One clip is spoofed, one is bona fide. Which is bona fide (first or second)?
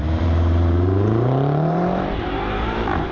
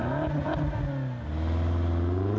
second